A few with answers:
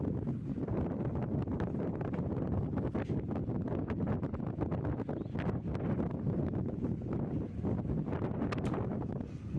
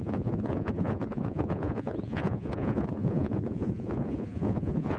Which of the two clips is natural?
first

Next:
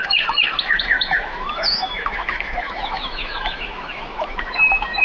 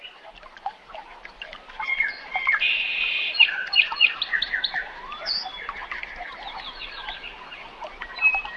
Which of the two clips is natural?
second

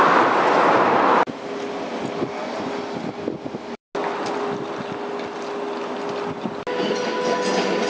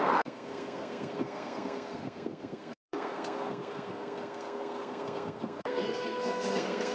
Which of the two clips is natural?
first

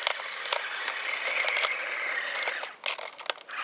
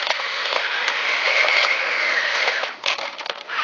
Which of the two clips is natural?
first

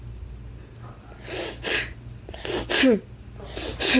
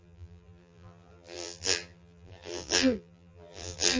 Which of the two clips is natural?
first